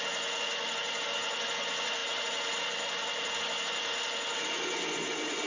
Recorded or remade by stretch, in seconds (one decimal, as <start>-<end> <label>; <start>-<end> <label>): 0.0-5.5 recorded

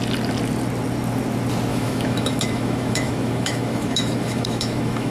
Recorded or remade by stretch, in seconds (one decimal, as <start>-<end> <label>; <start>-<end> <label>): 0.0-1.7 recorded; 1.7-5.1 remade

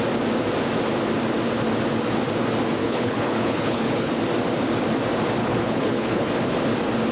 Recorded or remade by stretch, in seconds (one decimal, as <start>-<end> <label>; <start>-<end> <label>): 0.0-2.8 recorded; 2.8-4.1 remade; 4.1-5.4 recorded; 5.4-6.3 remade; 6.3-7.1 recorded

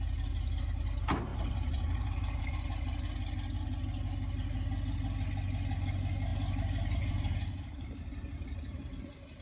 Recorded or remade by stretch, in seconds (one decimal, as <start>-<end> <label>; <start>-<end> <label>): 0.0-1.3 recorded; 1.3-2.4 remade; 2.4-6.3 recorded; 6.3-8.9 remade; 8.9-9.4 recorded

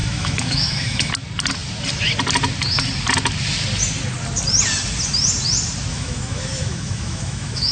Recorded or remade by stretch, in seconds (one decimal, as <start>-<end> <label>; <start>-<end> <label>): 0.0-1.1 remade; 1.1-5.9 recorded; 5.9-7.7 remade

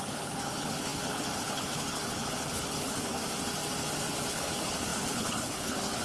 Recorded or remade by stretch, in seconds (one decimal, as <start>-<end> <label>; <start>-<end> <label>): 0.0-3.2 remade; 3.2-4.3 recorded; 4.3-6.0 remade

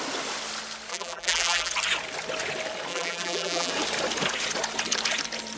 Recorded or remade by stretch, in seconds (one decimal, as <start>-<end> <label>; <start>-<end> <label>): 0.0-0.9 recorded; 0.9-1.7 remade; 1.7-2.9 recorded; 2.9-3.7 remade; 3.7-5.6 recorded